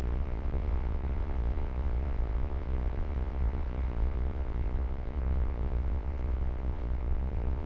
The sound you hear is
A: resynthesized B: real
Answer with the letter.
A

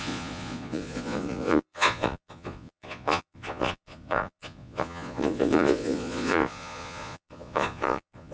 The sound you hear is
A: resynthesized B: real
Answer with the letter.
A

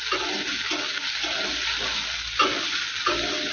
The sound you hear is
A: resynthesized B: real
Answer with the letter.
B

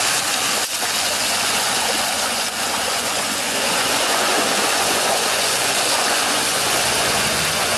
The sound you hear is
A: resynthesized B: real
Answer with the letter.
A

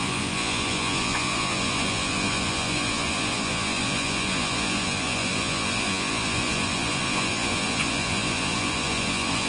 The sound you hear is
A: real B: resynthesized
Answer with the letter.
B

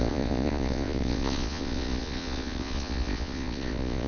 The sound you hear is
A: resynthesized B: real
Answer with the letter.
A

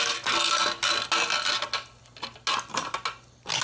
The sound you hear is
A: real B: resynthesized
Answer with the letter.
A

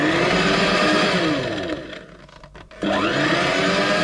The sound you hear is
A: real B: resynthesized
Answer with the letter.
A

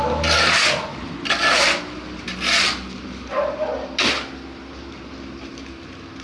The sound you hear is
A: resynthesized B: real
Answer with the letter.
B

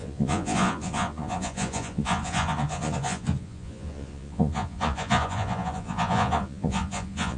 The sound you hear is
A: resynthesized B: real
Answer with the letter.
A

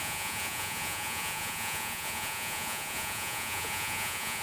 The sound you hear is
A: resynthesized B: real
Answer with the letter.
A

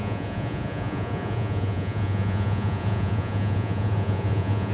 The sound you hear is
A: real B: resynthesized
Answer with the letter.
B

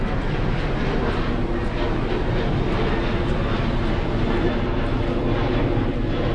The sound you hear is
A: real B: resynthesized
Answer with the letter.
A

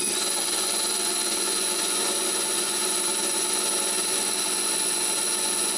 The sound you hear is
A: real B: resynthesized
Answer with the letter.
B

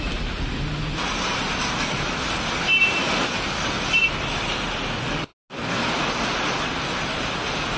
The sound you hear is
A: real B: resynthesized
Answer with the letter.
A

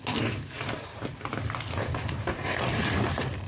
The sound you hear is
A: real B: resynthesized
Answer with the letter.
A